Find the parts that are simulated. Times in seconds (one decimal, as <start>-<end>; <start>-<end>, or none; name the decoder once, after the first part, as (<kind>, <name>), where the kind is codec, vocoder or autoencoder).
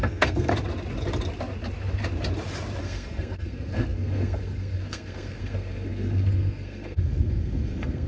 0.0-0.5 (codec, SNAC); 2.8-8.1